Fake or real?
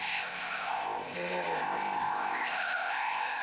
fake